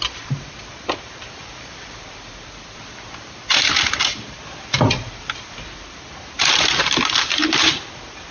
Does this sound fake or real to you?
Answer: fake